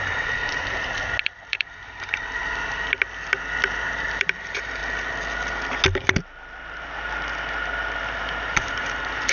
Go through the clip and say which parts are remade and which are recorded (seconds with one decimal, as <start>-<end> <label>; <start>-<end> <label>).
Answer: 0.0-0.4 remade; 0.4-1.2 recorded; 1.2-2.4 remade; 2.4-4.0 recorded; 4.0-4.8 remade; 4.8-8.0 recorded; 8.0-9.3 remade